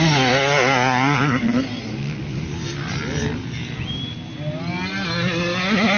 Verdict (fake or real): real